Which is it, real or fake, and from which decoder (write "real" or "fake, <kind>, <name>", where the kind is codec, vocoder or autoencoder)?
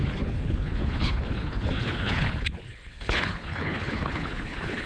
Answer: fake, codec, HILCodec